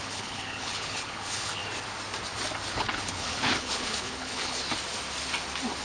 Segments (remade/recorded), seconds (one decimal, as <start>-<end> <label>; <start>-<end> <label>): 0.0-1.6 remade; 1.6-2.7 recorded; 2.7-4.6 remade; 4.6-5.8 recorded